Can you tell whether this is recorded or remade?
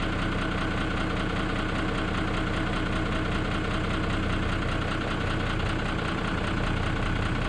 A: recorded